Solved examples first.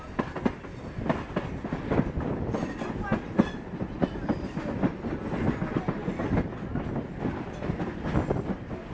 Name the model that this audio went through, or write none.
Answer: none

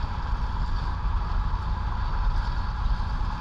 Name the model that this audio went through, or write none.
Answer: none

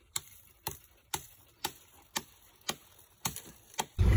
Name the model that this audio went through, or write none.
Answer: vocoder, BigVGAN v2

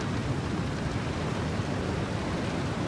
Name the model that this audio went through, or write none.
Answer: vocoder, BigVGAN v2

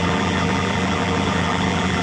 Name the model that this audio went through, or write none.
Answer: vocoder, BigVGAN v2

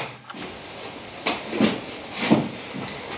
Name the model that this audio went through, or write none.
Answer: none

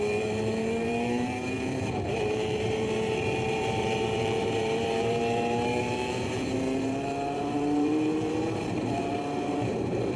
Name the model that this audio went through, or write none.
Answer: vocoder, BigVGAN v2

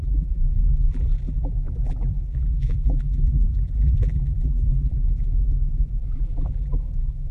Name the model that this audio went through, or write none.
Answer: vocoder, BigVGAN v2